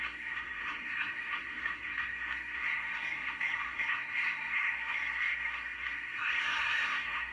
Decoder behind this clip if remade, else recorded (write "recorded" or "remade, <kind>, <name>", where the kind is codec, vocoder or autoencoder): remade, codec, SNAC